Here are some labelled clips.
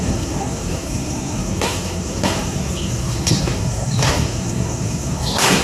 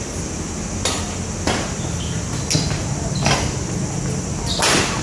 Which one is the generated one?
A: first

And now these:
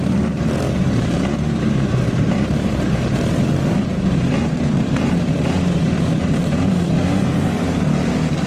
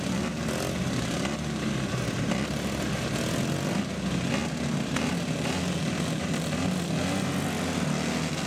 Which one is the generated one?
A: first